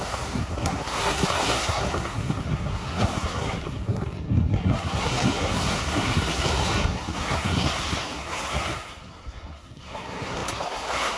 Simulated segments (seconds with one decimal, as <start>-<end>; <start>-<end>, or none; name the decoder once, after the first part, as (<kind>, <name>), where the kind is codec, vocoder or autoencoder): 0.0-11.2 (codec, SNAC)